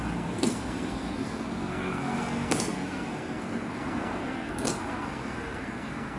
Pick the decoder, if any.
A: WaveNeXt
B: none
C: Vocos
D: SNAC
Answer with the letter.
D